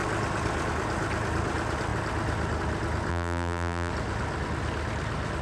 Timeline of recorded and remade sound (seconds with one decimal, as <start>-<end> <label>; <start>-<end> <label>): 0.0-3.1 recorded; 3.1-3.9 remade; 3.9-5.4 recorded